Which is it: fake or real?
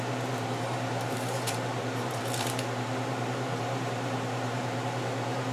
fake